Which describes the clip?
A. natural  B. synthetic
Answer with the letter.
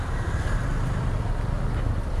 A